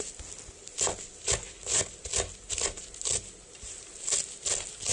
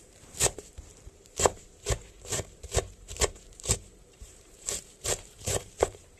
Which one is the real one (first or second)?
first